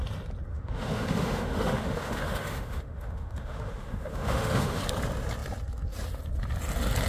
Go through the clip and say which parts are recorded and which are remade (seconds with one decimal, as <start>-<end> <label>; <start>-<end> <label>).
0.0-0.5 recorded; 0.5-4.8 remade; 4.8-7.1 recorded